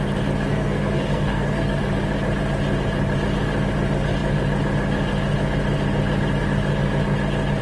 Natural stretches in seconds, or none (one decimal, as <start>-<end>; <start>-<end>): 0.0-0.5; 1.8-7.6